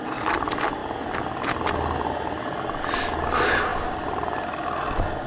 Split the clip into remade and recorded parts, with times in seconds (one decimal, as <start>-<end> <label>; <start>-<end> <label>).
0.0-5.3 recorded